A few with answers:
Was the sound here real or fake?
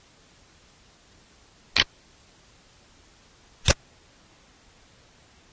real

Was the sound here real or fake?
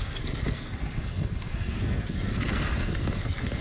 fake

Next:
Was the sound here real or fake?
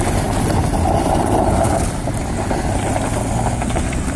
real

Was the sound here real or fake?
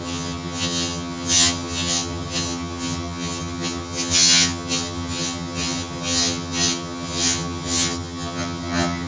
fake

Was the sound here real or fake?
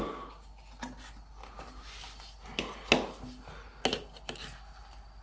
real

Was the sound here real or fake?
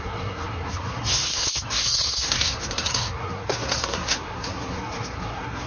fake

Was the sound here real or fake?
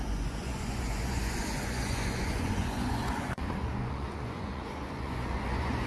fake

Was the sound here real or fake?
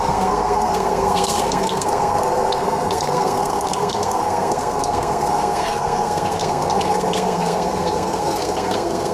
fake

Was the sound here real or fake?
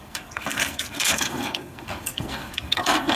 fake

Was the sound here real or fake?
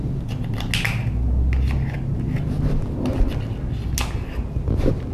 real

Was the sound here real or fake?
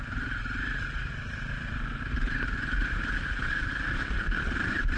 real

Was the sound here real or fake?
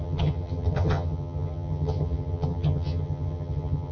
fake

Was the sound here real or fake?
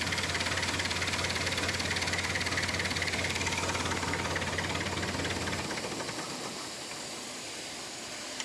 real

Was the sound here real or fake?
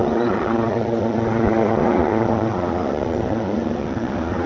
fake